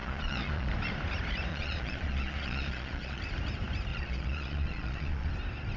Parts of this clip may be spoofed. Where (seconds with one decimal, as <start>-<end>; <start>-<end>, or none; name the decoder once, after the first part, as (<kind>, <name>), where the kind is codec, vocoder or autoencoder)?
0.0-0.7 (vocoder, Vocos); 1.5-3.2; 3.9-5.3